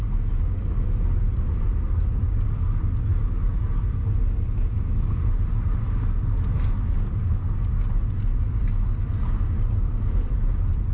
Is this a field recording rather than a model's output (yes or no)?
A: yes